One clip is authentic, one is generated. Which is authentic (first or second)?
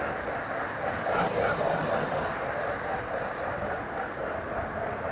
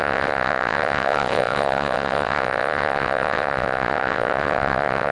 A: first